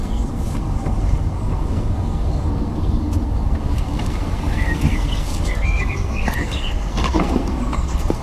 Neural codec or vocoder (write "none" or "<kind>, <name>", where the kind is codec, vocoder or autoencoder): codec, SNAC